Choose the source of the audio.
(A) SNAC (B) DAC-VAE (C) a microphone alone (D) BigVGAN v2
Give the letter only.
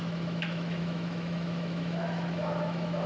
B